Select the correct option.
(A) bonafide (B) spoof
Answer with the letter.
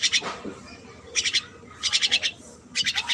A